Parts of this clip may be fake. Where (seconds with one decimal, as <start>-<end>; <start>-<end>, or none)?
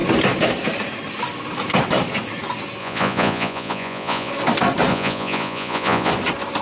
2.8-4.3; 4.9-6.1